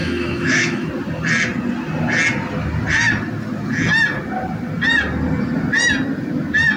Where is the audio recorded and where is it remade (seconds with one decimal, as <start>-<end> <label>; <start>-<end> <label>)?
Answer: 0.0-0.9 remade; 0.9-6.8 recorded